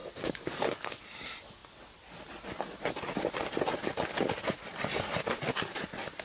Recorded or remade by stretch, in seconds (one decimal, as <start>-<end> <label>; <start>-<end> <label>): 0.0-1.0 remade; 1.0-6.2 recorded